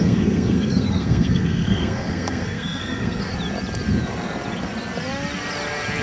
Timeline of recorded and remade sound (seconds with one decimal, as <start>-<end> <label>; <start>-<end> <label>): 0.0-3.3 remade; 3.3-6.0 recorded